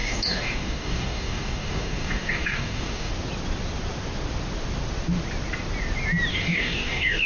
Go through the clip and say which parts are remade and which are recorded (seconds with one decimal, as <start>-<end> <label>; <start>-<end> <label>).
0.0-3.1 remade; 3.1-6.3 recorded; 6.3-7.3 remade